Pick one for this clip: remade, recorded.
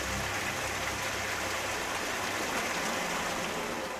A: recorded